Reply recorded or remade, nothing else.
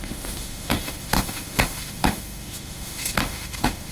remade